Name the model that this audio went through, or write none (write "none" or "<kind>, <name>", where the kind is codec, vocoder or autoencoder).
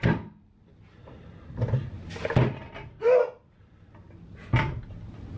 none